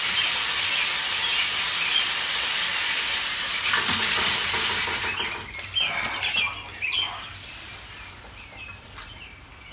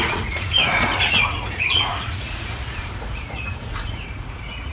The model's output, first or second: second